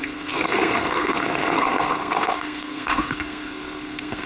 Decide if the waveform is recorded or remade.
remade